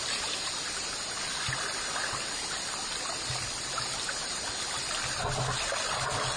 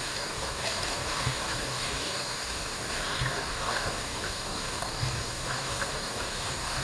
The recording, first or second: first